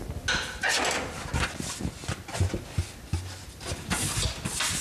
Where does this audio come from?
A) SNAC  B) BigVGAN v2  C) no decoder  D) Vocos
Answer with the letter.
C